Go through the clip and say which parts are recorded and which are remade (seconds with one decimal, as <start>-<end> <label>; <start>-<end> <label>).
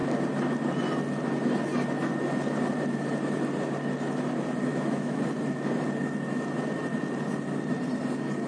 0.0-4.7 recorded; 4.7-5.2 remade; 5.2-8.5 recorded